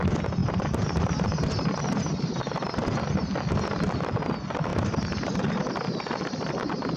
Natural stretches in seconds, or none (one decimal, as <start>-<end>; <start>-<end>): 0.0-0.4; 2.4-4.7; 5.6-7.0